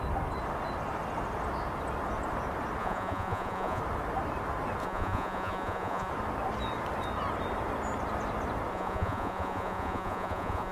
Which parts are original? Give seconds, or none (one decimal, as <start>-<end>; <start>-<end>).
0.0-2.8; 3.8-4.8; 6.1-8.7